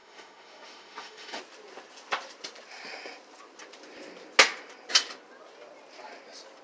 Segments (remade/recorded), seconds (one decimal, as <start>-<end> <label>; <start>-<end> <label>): 0.0-1.4 remade; 1.4-6.6 recorded